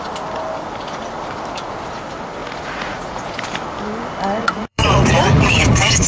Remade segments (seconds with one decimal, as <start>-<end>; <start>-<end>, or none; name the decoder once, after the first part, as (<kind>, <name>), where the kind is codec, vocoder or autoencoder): 2.4-3.3 (vocoder, Vocos); 4.4-6.1